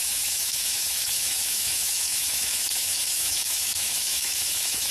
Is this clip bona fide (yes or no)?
no